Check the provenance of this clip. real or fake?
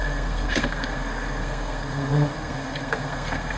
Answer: fake